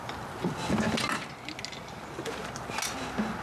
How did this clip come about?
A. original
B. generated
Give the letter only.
A